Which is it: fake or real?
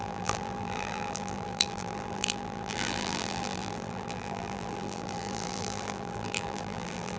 fake